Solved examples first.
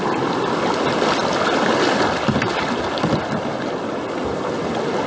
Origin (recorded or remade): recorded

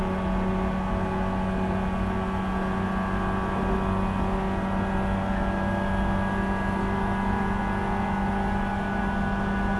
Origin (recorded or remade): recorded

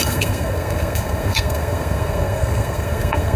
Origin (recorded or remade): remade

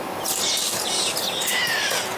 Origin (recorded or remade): recorded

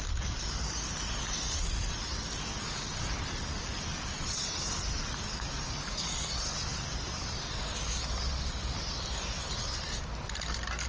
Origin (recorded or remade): recorded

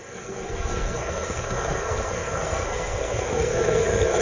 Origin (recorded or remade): remade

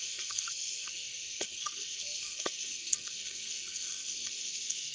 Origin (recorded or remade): remade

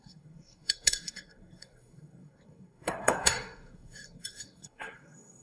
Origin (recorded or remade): remade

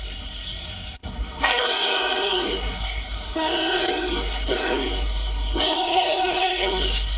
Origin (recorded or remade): remade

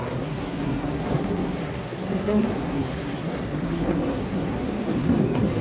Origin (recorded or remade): remade